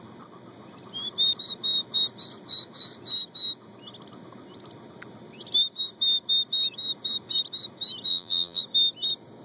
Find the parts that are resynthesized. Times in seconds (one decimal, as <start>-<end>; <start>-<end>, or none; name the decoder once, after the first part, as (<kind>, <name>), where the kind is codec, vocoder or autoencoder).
8.1-8.6 (vocoder, BigVGAN v2)